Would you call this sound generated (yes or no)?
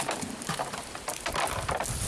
no